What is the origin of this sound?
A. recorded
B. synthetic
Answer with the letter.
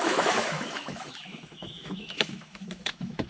B